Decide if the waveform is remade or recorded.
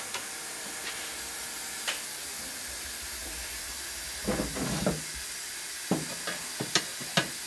recorded